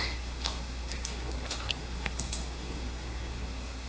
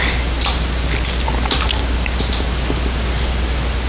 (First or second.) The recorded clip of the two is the second